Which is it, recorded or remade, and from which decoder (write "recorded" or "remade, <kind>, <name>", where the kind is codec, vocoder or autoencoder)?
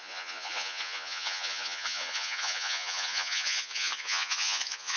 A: remade, vocoder, Vocos